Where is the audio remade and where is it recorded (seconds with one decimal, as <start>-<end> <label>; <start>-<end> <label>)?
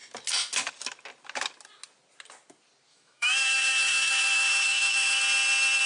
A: 0.0-2.9 recorded; 2.9-5.2 remade; 5.2-5.9 recorded